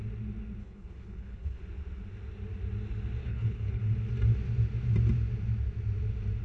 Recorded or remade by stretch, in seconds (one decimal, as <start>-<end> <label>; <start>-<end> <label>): 0.0-0.6 recorded; 0.6-1.6 remade; 1.6-3.2 recorded; 3.2-3.8 remade; 3.8-6.4 recorded